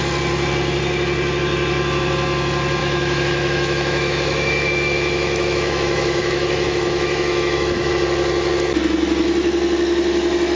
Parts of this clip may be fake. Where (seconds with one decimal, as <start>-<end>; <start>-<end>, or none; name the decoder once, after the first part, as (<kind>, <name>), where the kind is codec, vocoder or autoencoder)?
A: 2.8-7.9 (autoencoder, DAC-VAE)